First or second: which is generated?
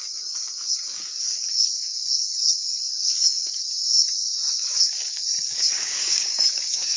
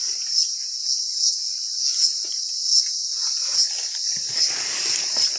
first